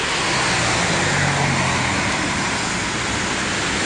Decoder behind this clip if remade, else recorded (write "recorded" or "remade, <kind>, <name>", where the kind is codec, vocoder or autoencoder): recorded